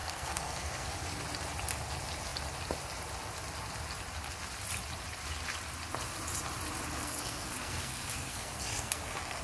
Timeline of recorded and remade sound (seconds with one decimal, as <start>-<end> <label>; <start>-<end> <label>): 0.0-0.9 remade; 0.9-7.0 recorded; 7.0-9.4 remade